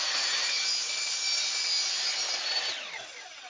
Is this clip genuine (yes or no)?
yes